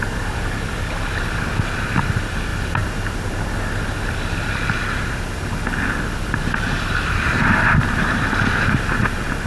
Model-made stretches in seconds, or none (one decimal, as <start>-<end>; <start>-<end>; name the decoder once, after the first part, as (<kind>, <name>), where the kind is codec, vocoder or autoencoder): 0.0-2.5 (vocoder, BigVGAN v2); 3.2-9.5